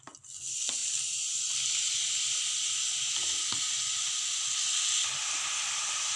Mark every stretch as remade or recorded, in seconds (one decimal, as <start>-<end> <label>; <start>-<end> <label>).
0.0-6.2 recorded